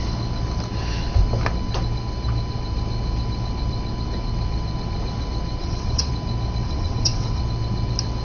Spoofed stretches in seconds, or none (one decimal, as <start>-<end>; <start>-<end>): 5.6-6.1; 6.6-7.4